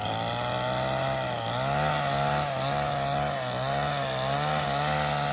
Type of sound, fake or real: real